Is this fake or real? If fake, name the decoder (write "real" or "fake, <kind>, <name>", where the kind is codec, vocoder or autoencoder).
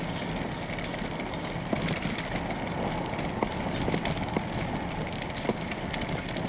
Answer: real